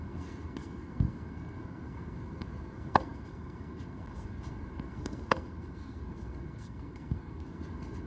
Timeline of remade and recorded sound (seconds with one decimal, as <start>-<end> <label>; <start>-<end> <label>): 0.0-8.1 remade